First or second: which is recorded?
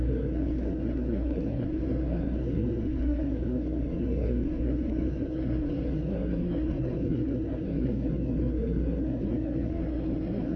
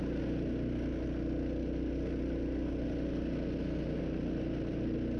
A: second